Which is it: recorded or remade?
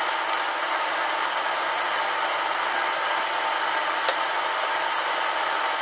recorded